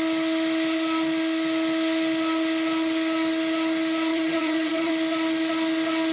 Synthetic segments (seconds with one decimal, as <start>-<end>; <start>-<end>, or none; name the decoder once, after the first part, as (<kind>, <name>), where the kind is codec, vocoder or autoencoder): 4.1-4.9 (vocoder, HiFi-GAN)